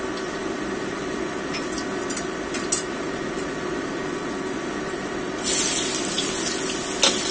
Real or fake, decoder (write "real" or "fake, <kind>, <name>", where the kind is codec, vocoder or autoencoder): real